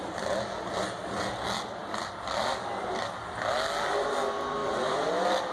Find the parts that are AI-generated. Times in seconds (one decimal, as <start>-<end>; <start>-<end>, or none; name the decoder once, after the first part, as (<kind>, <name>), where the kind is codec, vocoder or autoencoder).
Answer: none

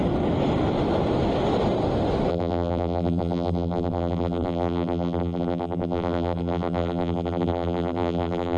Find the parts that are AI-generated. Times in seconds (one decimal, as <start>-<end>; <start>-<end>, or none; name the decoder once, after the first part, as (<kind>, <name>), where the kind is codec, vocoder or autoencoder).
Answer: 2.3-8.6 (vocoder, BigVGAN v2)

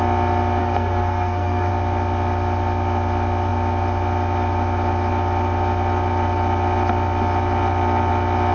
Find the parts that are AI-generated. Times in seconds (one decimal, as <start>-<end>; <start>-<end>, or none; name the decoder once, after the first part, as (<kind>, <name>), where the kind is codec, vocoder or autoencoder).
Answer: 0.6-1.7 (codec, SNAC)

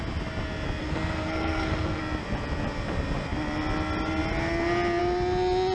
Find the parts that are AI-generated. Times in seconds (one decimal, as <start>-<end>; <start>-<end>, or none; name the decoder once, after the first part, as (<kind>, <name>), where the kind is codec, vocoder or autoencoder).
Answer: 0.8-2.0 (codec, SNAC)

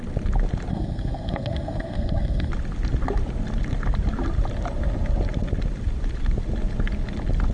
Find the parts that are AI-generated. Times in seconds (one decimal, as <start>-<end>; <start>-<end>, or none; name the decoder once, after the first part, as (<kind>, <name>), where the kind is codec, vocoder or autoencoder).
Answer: 0.7-2.5 (codec, SNAC)

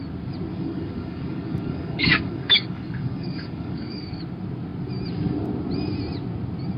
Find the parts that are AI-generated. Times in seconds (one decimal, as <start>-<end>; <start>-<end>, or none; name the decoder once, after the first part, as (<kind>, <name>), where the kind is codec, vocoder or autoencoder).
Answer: 0.5-4.2 (codec, DAC)